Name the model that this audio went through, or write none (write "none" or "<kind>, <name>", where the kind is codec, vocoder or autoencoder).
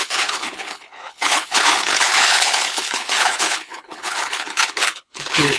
codec, HILCodec